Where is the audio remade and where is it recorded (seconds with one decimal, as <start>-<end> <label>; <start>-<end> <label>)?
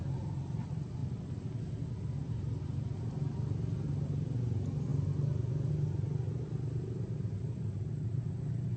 0.0-8.8 recorded